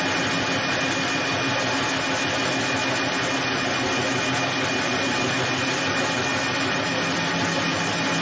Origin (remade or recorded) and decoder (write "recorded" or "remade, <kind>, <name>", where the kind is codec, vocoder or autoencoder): recorded